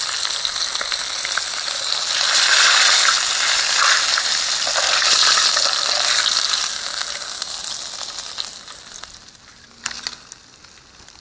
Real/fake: real